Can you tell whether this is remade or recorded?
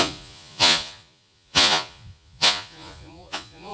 remade